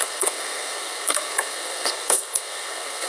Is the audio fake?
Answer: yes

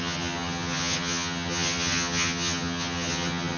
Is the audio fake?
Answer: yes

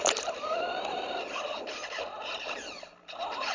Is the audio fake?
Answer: yes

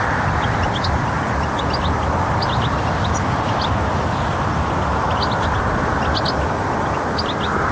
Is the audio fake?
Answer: no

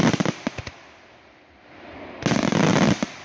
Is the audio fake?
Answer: no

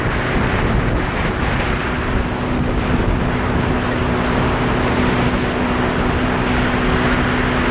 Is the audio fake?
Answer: no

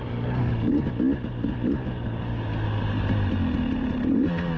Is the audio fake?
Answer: no